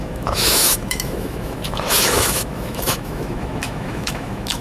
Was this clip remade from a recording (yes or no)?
yes